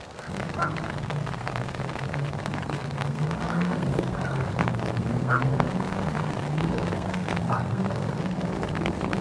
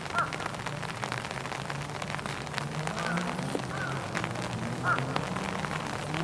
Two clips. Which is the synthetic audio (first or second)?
first